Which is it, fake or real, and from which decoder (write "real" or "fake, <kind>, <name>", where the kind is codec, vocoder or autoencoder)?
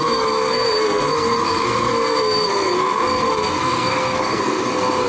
fake, codec, SNAC